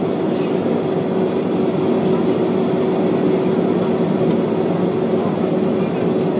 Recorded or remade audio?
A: recorded